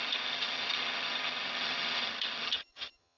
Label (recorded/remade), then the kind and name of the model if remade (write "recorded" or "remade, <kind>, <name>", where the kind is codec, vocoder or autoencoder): remade, vocoder, HiFi-GAN